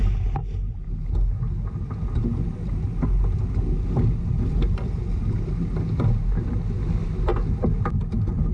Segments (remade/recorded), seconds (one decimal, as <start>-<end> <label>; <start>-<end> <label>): 0.0-8.5 recorded